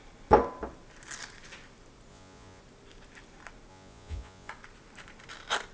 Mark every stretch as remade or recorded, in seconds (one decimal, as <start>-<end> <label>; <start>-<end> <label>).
0.0-2.1 recorded; 2.1-2.6 remade; 2.6-3.7 recorded; 3.7-4.5 remade; 4.5-5.7 recorded